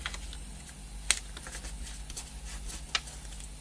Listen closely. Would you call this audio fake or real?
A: real